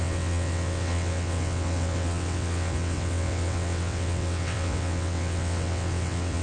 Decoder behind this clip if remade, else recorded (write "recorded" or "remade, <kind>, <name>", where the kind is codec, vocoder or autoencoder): remade, vocoder, WaveNeXt